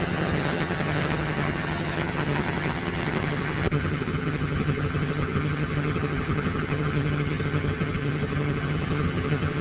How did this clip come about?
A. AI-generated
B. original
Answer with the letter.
A